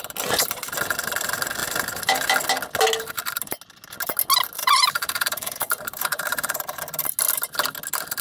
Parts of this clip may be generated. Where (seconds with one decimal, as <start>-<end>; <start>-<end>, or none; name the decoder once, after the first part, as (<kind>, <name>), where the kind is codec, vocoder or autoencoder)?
4.6-6.8 (vocoder, BigVGAN v2)